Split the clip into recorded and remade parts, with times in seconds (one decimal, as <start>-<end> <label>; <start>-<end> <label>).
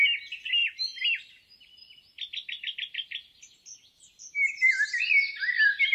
0.0-5.9 recorded